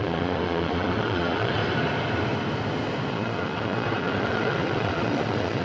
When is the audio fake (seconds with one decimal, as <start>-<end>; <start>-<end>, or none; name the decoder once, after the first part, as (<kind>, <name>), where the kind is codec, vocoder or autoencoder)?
0.0-1.6 (vocoder, Vocos); 3.1-5.6